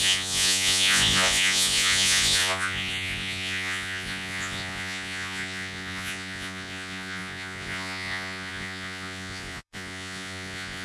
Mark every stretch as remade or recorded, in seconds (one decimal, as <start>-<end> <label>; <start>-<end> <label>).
0.0-10.8 remade